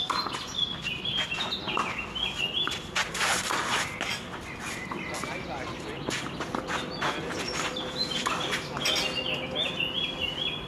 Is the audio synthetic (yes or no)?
no